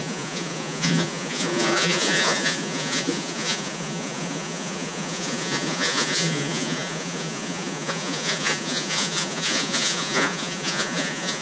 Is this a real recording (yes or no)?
no